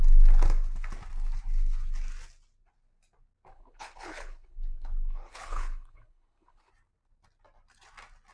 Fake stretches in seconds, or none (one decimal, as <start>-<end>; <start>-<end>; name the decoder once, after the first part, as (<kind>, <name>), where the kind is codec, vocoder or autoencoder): 3.5-6.7 (codec, HILCodec)